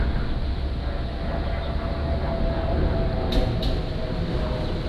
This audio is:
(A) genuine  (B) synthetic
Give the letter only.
A